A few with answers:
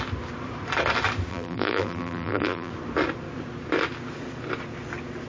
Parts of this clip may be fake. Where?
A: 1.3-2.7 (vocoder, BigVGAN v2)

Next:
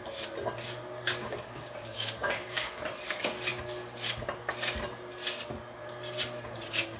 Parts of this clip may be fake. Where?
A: 1.2-2.8 (codec, DAC)

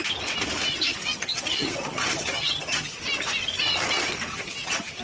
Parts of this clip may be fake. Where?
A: 0.7-3.0 (vocoder, HiFi-GAN); 4.3-5.0

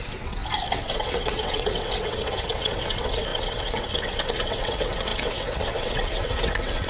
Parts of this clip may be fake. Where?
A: 0.0-0.4 (vocoder, WaveNeXt); 0.9-6.9